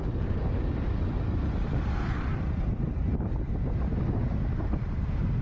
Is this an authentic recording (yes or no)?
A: yes